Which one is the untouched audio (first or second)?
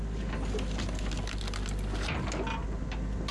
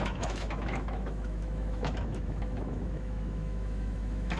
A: first